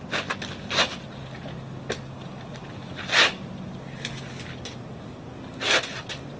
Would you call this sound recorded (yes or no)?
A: yes